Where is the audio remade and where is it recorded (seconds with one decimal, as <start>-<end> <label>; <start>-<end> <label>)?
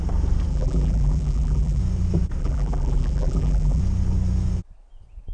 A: 0.0-0.5 recorded; 0.5-1.8 remade; 1.8-2.4 recorded; 2.4-3.8 remade; 3.8-5.3 recorded